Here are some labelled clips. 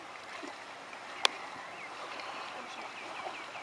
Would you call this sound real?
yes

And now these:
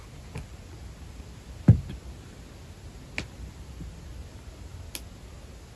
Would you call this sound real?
yes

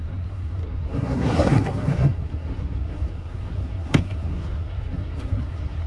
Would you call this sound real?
no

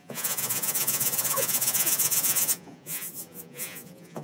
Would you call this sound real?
no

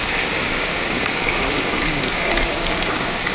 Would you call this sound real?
no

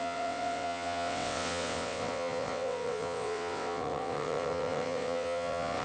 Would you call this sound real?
no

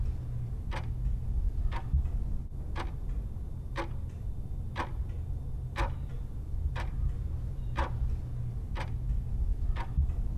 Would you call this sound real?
yes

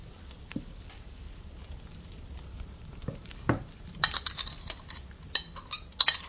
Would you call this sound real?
yes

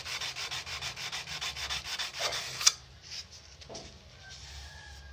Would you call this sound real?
yes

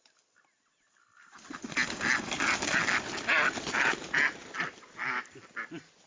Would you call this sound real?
yes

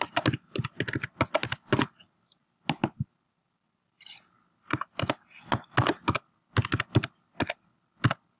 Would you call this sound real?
yes